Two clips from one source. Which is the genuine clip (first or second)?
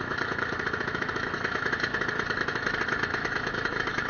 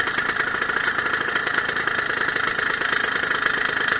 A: second